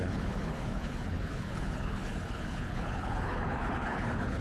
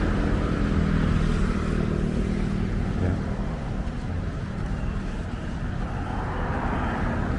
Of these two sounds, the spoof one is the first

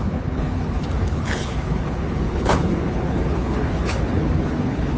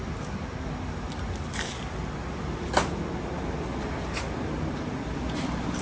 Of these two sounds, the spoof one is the first